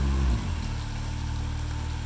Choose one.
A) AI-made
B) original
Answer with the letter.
B